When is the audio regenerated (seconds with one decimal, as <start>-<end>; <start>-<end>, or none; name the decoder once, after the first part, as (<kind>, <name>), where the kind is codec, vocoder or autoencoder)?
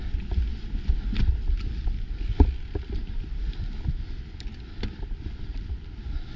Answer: none